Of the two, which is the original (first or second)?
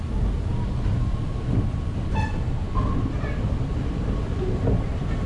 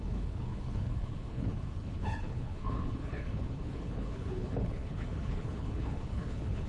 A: first